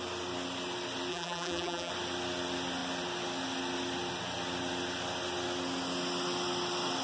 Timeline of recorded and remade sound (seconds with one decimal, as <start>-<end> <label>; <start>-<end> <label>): 0.0-1.1 recorded; 1.1-1.9 remade; 1.9-7.0 recorded